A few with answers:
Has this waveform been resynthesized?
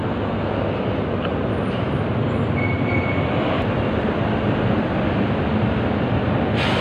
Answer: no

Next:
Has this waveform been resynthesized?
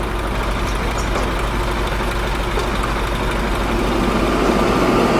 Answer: no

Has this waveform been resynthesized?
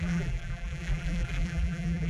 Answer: yes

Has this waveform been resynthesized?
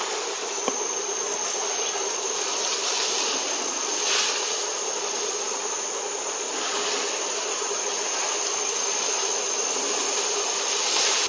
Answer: no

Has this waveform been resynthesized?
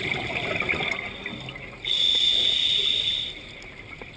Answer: no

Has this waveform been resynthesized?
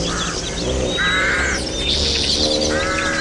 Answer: no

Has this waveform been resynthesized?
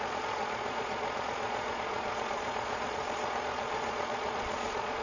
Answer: yes